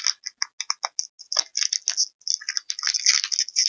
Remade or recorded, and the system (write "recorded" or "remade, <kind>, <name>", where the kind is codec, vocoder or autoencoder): recorded